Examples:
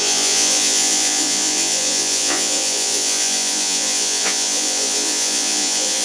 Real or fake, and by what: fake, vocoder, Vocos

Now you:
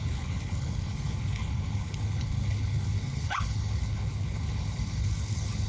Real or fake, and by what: fake, codec, HILCodec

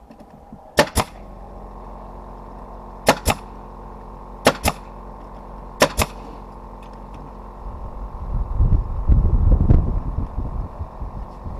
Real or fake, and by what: real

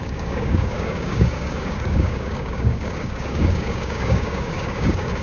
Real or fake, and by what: fake, codec, DAC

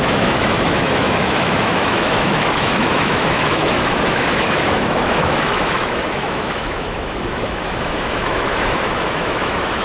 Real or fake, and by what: fake, autoencoder, DAC-VAE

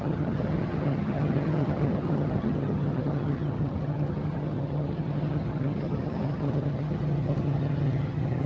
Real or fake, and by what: fake, vocoder, HiFi-GAN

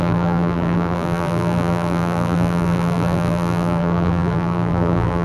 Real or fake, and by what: fake, vocoder, BigVGAN v2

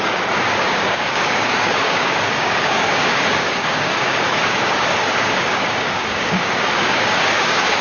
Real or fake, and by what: fake, codec, DAC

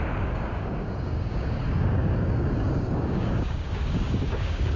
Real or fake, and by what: fake, codec, DAC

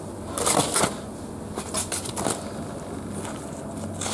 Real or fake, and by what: real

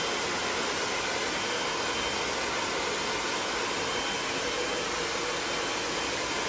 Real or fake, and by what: real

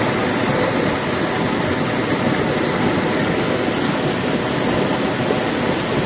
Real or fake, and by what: real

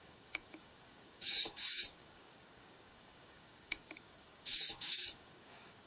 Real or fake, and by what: fake, codec, DAC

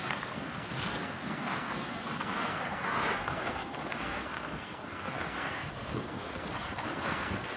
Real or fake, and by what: fake, codec, SNAC